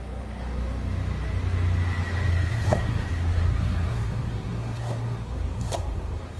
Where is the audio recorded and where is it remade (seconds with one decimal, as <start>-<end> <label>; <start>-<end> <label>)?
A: 0.0-2.3 recorded; 2.3-6.4 remade

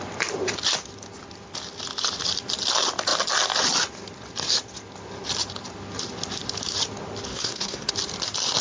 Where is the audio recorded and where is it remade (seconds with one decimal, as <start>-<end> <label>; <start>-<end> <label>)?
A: 0.0-7.3 recorded; 7.3-7.9 remade; 7.9-8.6 recorded

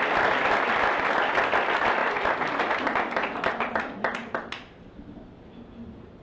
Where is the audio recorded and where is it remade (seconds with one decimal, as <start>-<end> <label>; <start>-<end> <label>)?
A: 0.0-6.2 recorded

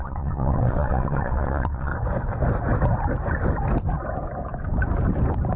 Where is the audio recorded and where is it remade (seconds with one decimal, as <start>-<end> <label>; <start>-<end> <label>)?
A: 0.0-1.9 remade; 1.9-5.6 recorded

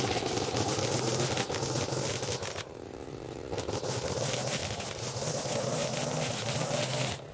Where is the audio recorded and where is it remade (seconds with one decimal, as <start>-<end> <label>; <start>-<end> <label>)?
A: 0.0-7.3 recorded

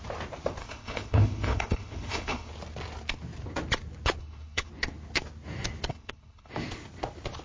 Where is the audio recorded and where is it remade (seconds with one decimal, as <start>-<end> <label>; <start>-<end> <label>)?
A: 0.0-0.6 recorded; 0.6-2.5 remade; 2.5-4.2 recorded; 4.2-4.7 remade; 4.7-5.9 recorded; 5.9-6.5 remade; 6.5-7.4 recorded